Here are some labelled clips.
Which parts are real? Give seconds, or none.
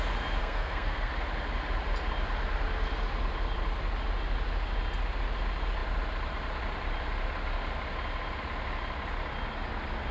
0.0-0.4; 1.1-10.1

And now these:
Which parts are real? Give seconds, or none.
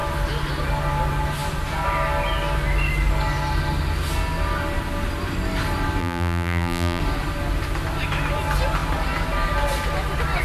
0.0-6.0; 7.0-10.4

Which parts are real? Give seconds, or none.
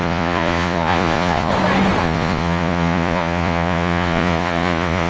1.5-2.0